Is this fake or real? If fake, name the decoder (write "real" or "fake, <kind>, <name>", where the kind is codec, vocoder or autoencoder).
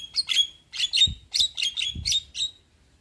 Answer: real